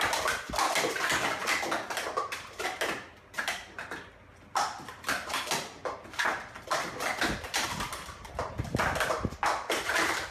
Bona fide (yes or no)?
yes